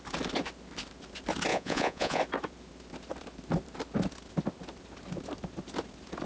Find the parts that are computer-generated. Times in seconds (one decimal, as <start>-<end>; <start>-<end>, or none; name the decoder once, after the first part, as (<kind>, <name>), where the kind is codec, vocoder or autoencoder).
1.5-2.2 (vocoder, Vocos)

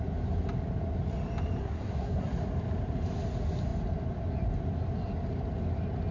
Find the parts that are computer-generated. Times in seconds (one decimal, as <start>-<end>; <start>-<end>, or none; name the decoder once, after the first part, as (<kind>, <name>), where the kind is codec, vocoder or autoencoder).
1.6-2.2 (codec, SNAC)

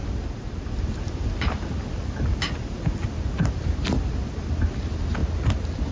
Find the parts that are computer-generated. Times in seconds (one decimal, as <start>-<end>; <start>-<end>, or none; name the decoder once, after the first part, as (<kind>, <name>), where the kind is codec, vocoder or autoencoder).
none

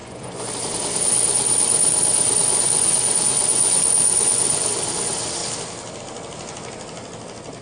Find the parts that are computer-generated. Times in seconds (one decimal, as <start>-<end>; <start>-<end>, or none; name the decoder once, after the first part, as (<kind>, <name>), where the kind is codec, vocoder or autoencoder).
0.0-0.5 (vocoder, Vocos); 2.5-4.7

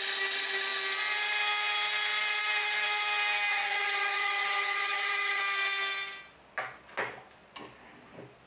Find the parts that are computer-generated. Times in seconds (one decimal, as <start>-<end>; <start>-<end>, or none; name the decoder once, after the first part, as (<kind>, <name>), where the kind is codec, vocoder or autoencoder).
3.5-5.4 (vocoder, HiFi-GAN)

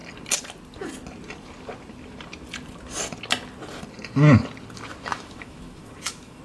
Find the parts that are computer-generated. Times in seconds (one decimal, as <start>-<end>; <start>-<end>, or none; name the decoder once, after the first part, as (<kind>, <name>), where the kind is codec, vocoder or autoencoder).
5.1-6.4 (autoencoder, DAC-VAE)

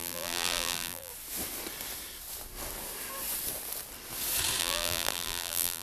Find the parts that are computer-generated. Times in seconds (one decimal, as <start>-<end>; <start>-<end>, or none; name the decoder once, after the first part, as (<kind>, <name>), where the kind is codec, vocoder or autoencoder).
0.0-1.1 (vocoder, BigVGAN v2); 4.6-5.8